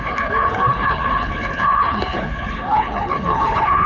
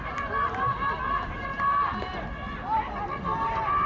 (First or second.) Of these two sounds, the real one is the second